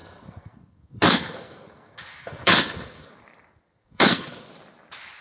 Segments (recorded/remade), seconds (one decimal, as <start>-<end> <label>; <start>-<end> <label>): 0.0-3.1 remade; 3.1-3.8 recorded; 3.8-4.5 remade; 4.5-5.2 recorded